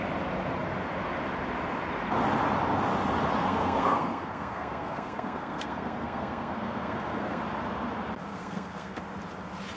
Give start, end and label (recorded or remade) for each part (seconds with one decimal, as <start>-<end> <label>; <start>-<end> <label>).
0.0-3.4 recorded; 3.4-7.4 remade; 7.4-8.3 recorded; 8.3-9.0 remade; 9.0-9.8 recorded